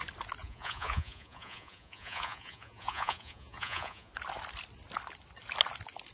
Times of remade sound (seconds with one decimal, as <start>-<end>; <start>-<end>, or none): 0.4-4.1